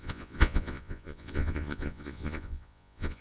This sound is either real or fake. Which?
fake